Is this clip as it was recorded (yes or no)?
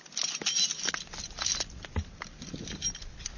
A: yes